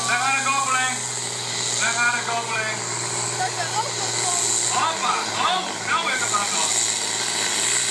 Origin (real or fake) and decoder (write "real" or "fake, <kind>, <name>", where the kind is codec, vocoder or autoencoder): real